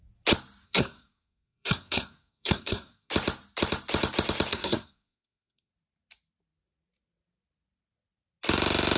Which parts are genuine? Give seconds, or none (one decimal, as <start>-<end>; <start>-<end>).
0.0-0.6; 3.1-4.5; 5.7-9.0